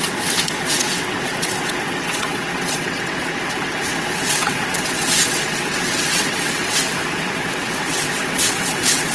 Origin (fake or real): fake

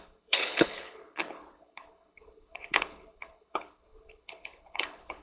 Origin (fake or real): fake